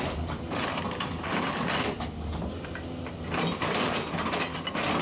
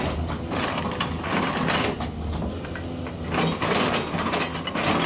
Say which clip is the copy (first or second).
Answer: first